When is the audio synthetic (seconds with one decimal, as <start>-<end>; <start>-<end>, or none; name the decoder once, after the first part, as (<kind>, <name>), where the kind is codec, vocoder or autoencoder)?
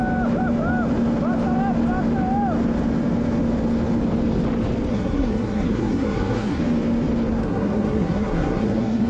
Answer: 4.9-6.6 (codec, SNAC); 7.4-9.1